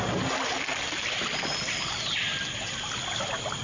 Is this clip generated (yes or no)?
no